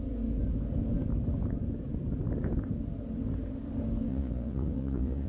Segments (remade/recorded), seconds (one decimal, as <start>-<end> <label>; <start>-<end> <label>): 0.0-4.1 recorded; 4.1-5.3 remade